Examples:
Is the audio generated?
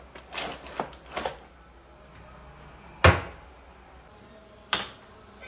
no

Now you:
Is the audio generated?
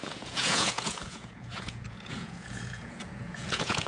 yes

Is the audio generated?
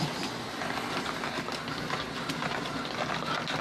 no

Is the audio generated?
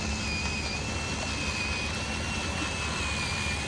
no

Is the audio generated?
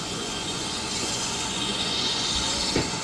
yes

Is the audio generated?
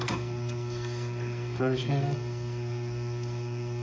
yes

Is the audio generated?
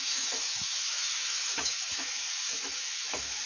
yes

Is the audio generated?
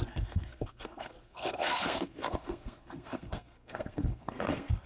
yes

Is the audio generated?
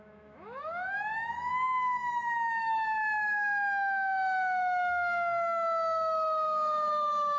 yes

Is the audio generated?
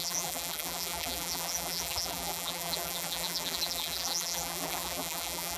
yes